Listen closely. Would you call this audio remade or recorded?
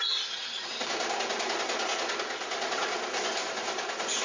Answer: recorded